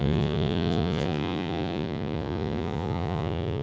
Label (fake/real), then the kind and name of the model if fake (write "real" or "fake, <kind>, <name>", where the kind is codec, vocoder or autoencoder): fake, vocoder, Vocos